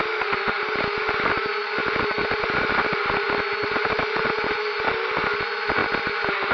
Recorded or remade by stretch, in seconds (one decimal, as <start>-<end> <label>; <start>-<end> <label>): 0.0-6.5 recorded